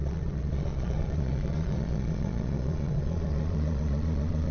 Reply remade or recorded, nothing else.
remade